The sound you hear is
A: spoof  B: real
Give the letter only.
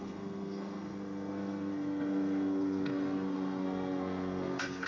A